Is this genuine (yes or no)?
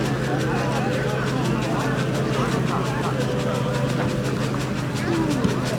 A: yes